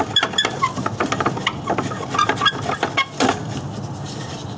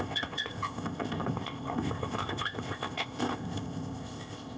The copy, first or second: second